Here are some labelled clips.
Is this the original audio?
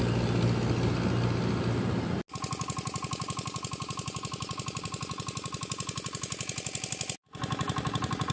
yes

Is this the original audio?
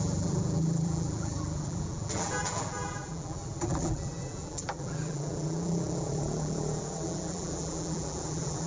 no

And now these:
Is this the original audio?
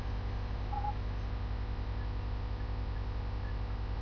yes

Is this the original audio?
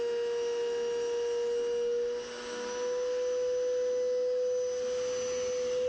yes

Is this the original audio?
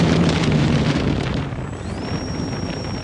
no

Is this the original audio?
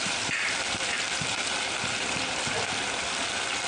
no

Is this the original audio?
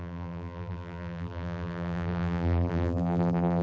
no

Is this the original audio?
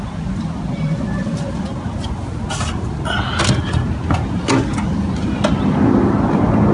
yes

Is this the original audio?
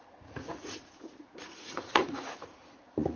no